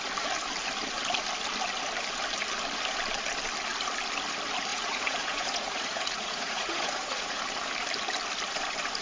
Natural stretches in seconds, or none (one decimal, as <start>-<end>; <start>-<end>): 0.0-4.7; 7.4-9.0